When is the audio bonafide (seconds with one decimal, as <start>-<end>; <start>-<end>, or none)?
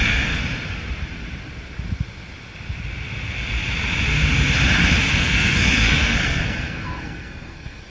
0.4-5.1